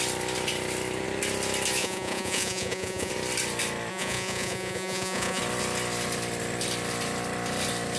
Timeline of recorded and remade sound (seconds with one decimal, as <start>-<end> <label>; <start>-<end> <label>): 0.0-1.8 recorded; 1.8-3.1 remade; 3.1-3.9 recorded; 3.9-5.4 remade; 5.4-8.0 recorded

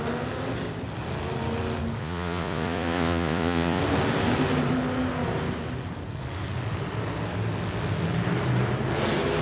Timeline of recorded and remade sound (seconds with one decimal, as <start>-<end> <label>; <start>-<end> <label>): 0.0-2.0 recorded; 2.0-3.8 remade; 3.8-9.4 recorded